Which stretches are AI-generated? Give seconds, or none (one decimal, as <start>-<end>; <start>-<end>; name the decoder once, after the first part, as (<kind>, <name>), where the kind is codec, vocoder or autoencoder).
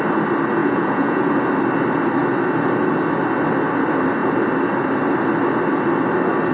0.6-1.3 (vocoder, Vocos)